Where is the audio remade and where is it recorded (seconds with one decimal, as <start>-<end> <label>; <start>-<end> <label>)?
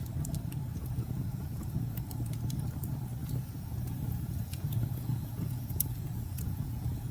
0.0-0.7 recorded; 0.7-2.0 remade; 2.0-3.2 recorded; 3.2-7.1 remade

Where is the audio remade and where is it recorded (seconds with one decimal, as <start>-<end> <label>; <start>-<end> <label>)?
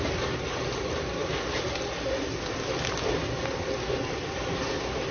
0.0-5.1 recorded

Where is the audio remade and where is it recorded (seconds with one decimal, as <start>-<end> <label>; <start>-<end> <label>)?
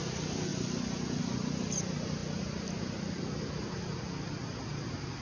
0.0-5.2 recorded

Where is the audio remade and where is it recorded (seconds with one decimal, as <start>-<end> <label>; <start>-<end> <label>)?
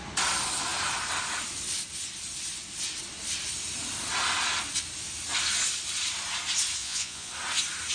0.0-6.8 recorded; 6.8-7.3 remade; 7.3-7.9 recorded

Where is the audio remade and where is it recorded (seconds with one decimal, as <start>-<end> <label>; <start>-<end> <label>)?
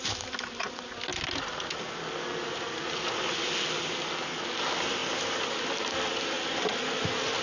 0.0-7.4 recorded